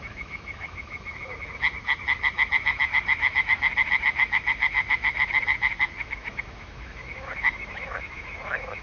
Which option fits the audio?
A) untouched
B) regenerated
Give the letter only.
B